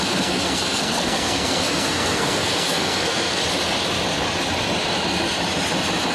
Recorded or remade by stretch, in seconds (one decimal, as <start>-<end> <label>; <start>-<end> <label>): 0.0-3.4 remade; 3.4-6.1 recorded